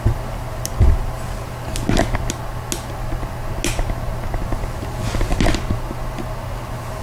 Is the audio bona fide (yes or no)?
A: yes